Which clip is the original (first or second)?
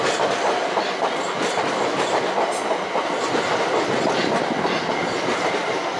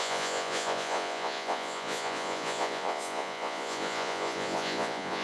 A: first